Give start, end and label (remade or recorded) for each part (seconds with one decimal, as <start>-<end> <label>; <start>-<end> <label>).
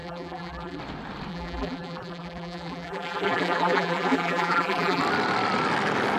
0.0-0.8 remade; 0.8-1.3 recorded; 1.3-5.0 remade; 5.0-6.2 recorded